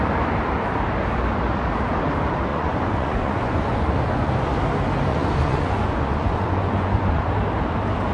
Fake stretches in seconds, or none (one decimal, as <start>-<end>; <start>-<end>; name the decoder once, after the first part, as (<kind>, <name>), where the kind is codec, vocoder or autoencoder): 2.5-4.3 (vocoder, Vocos); 5.1-7.2